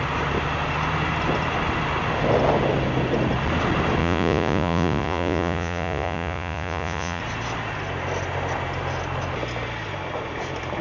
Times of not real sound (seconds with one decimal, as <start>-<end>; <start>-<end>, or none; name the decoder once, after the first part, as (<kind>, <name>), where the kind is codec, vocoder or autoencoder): 4.0-7.2 (vocoder, Vocos)